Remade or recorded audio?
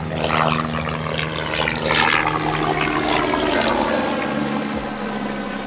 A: recorded